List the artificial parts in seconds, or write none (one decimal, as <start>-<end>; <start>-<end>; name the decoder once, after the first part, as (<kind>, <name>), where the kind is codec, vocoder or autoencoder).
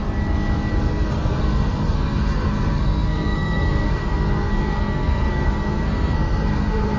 0.7-7.0 (codec, SNAC)